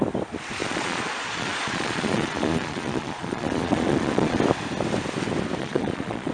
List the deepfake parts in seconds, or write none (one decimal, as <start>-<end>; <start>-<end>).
0.6-4.4; 5.6-6.3